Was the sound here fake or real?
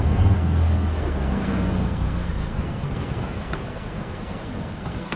fake